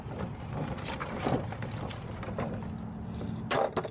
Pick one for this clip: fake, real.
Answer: real